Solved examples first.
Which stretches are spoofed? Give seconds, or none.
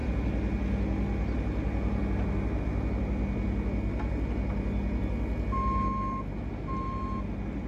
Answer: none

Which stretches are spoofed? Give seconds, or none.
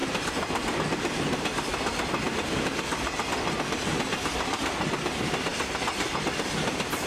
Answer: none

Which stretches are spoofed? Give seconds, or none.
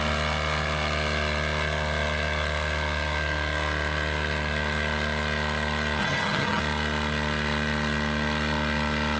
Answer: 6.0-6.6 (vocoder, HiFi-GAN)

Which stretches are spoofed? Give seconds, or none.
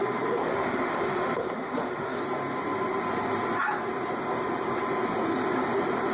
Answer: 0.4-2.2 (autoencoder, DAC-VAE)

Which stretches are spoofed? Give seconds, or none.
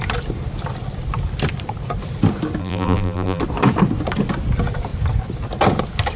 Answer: 2.6-3.4 (vocoder, BigVGAN v2)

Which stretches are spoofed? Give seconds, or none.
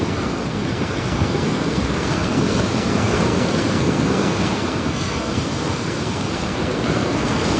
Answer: 0.0-7.6 (codec, SNAC)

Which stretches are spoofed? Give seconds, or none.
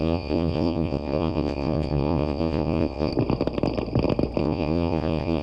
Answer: 0.0-3.1 (vocoder, Vocos); 4.4-5.4